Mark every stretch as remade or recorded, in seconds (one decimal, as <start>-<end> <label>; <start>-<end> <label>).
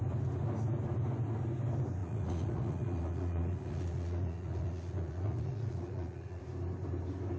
0.0-2.0 recorded; 2.0-6.4 remade; 6.4-7.4 recorded